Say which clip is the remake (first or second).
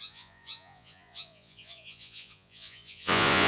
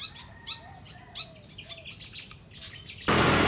first